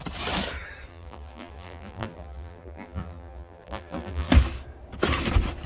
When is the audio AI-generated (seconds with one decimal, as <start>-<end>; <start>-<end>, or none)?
0.9-4.3